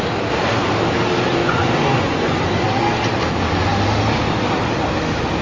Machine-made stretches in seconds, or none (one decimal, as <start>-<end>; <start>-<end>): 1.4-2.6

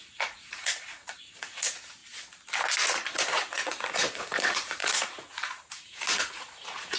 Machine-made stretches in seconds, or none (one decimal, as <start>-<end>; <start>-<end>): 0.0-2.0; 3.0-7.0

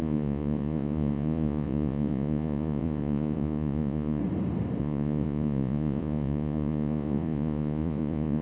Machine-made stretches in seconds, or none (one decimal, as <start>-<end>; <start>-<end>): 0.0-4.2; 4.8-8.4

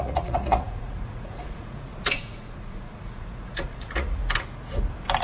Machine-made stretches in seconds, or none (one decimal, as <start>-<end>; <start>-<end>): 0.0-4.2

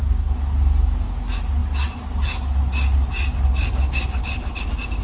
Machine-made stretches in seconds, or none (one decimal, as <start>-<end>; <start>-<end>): none